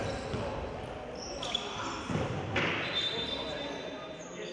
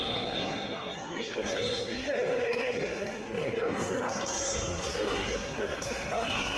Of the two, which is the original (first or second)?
first